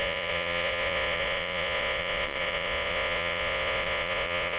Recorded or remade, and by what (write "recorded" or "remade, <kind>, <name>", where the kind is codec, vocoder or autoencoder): remade, vocoder, Vocos